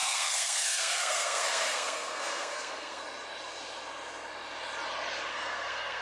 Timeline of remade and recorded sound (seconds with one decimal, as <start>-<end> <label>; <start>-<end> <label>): 0.0-3.0 remade; 3.0-5.3 recorded; 5.3-6.0 remade